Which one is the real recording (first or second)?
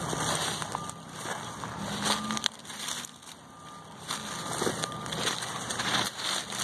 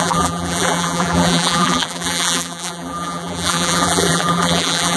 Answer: first